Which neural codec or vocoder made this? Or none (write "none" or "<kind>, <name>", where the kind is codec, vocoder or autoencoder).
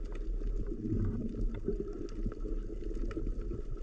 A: none